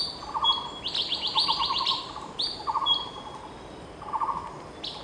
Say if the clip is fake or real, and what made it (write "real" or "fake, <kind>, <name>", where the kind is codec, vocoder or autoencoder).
real